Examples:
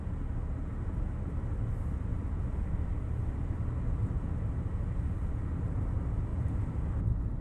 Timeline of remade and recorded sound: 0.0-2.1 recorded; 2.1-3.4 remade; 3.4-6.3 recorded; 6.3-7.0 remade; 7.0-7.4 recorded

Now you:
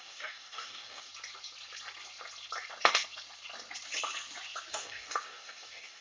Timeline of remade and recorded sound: 0.0-1.1 remade; 1.1-4.7 recorded; 4.7-6.0 remade

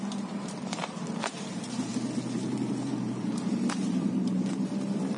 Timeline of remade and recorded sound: 0.0-1.9 remade; 1.9-2.7 recorded; 2.7-5.2 remade

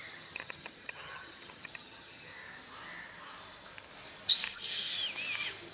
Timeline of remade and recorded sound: 0.0-2.3 remade; 2.3-5.7 recorded

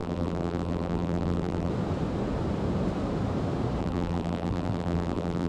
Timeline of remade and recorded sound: 0.0-1.7 remade; 1.7-3.8 recorded; 3.8-5.5 remade